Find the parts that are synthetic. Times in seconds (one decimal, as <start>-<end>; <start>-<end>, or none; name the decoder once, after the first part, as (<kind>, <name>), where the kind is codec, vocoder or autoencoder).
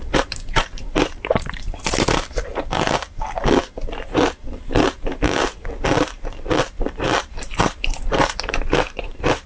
0.0-2.5 (vocoder, BigVGAN v2); 7.2-9.5